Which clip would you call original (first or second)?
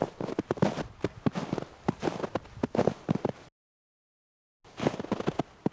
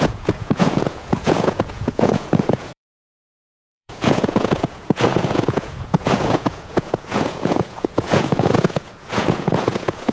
first